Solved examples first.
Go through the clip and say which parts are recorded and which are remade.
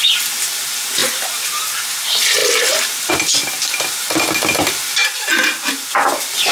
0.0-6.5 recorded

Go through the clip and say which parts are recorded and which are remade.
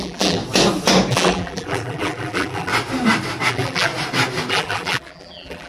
0.0-0.4 remade; 0.4-1.1 recorded; 1.1-2.7 remade; 2.7-3.5 recorded; 3.5-3.9 remade; 3.9-4.5 recorded; 4.5-5.7 remade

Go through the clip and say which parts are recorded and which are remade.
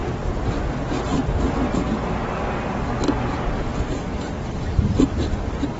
0.0-3.7 recorded; 3.7-5.0 remade; 5.0-5.8 recorded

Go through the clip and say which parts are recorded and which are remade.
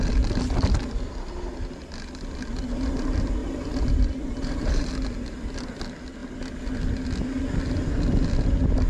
0.0-3.4 recorded; 3.4-4.9 remade; 4.9-8.9 recorded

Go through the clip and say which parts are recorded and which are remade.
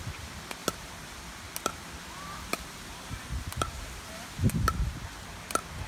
0.0-0.6 recorded; 0.6-1.2 remade; 1.2-2.5 recorded; 2.5-4.3 remade; 4.3-5.9 recorded